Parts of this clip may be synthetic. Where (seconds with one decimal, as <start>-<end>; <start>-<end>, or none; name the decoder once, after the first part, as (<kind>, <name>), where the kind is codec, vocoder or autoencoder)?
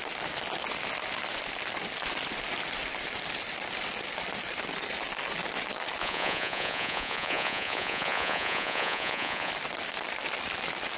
6.0-9.5 (vocoder, Vocos)